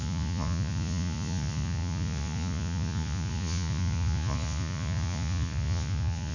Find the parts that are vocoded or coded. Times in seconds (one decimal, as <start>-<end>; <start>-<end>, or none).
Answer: 0.0-6.3